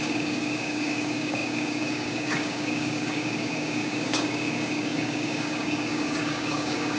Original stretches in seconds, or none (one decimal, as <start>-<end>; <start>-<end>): none